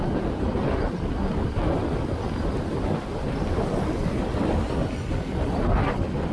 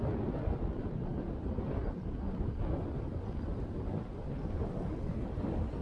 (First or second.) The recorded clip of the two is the second